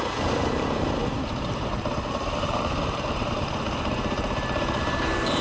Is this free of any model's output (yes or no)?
no